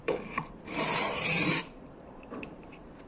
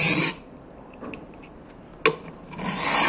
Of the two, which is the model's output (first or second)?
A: first